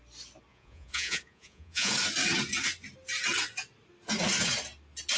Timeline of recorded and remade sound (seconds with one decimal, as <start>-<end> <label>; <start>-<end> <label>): 0.0-0.5 recorded; 0.5-1.9 remade; 1.9-5.2 recorded